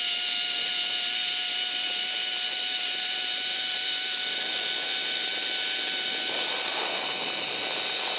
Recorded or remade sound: recorded